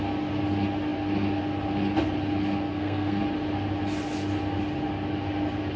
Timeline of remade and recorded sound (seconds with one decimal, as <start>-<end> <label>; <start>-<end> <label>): 0.0-2.7 recorded; 2.7-3.2 remade; 3.2-5.8 recorded